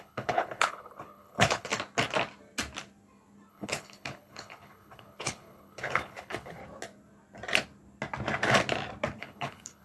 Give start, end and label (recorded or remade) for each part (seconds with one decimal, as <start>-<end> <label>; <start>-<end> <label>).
0.0-1.7 remade; 1.7-3.5 recorded; 3.5-6.6 remade; 6.6-9.2 recorded; 9.2-9.8 remade